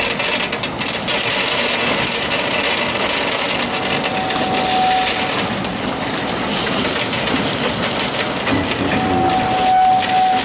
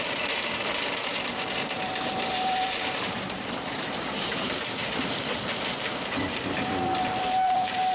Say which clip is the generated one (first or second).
second